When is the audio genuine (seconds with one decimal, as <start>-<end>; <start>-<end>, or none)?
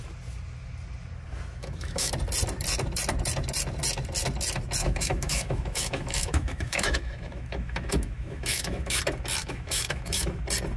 0.0-1.6; 2.1-4.8; 9.0-9.4; 10.4-10.8